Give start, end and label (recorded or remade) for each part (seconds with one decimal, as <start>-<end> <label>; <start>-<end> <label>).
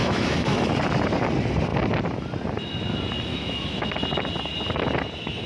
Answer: 0.0-0.7 remade; 0.7-3.3 recorded; 3.3-3.9 remade; 3.9-5.5 recorded